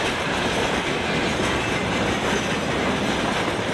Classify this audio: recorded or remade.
recorded